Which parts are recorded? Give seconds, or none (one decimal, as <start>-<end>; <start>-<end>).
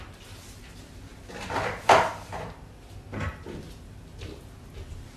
0.0-5.2